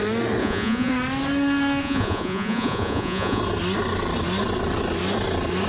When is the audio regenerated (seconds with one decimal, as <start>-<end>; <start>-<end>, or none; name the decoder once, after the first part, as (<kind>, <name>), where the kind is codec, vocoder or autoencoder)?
0.4-0.9 (vocoder, Vocos); 1.8-3.4